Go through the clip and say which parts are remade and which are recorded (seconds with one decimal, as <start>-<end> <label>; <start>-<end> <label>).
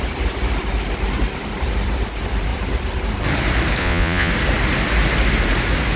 0.0-3.8 recorded; 3.8-4.3 remade; 4.3-6.0 recorded